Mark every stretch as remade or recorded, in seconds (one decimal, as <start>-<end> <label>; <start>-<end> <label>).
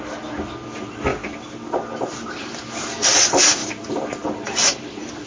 0.0-1.1 recorded; 1.1-2.6 remade; 2.6-3.6 recorded; 3.6-4.3 remade; 4.3-5.3 recorded